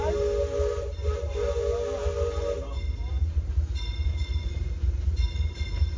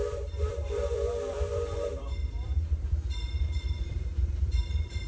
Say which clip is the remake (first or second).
second